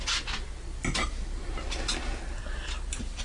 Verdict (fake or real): real